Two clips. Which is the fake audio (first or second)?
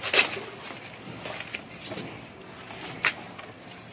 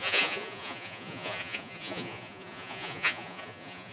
second